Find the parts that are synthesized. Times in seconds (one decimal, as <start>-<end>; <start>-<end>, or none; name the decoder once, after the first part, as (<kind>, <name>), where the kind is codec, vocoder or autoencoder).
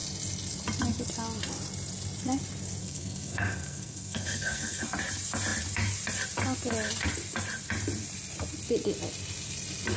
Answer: 2.8-4.8 (codec, SNAC)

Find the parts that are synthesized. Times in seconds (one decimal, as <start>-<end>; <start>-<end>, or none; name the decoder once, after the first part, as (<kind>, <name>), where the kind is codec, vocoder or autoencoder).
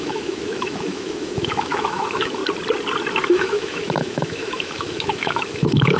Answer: 0.0-2.4 (autoencoder, DAC-VAE); 3.2-6.0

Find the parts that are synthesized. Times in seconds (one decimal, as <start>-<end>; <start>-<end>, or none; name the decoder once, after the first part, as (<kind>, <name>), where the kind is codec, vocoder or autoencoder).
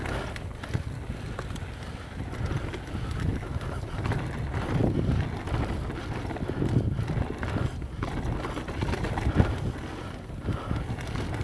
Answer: none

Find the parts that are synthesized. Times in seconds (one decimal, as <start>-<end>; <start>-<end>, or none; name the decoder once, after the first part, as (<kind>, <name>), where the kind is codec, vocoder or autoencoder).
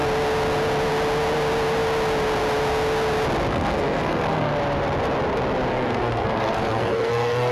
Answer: 3.5-4.5 (codec, SNAC); 5.7-7.5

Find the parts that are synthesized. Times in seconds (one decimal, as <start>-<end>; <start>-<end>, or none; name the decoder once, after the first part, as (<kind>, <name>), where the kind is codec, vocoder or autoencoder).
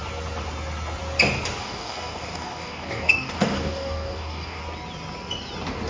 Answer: 1.6-4.6 (codec, DAC)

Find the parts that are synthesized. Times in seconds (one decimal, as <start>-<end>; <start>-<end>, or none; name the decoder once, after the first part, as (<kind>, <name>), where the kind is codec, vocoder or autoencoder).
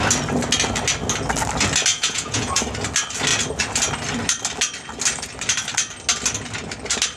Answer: 1.9-2.5 (vocoder, Vocos)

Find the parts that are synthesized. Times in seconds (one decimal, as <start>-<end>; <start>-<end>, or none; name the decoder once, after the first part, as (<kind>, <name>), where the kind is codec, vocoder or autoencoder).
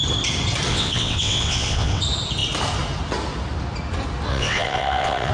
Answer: 0.7-2.0 (vocoder, WaveNeXt); 4.3-5.3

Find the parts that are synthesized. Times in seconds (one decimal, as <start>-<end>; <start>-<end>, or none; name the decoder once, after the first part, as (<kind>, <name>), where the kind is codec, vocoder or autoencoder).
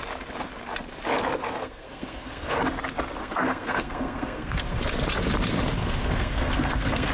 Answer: 1.6-2.6 (codec, SNAC); 3.2-4.8; 5.8-7.1